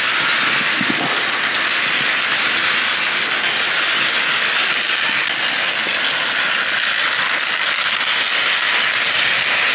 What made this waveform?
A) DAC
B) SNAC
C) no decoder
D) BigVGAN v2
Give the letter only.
C